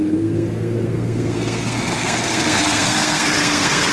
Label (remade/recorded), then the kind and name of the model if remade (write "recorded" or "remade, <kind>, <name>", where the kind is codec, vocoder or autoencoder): remade, codec, SNAC